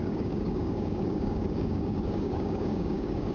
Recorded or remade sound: remade